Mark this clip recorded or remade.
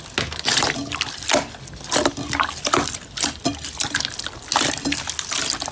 recorded